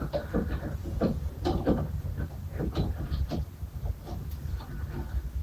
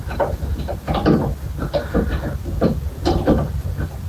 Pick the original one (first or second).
second